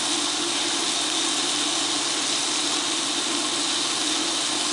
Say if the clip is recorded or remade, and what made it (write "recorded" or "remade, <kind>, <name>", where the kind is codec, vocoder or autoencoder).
recorded